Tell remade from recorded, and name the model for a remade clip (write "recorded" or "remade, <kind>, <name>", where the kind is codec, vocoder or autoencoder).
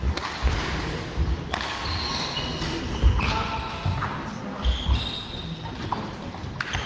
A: recorded